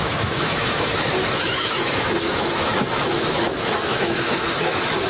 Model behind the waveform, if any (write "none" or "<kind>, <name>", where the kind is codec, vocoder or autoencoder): autoencoder, DAC-VAE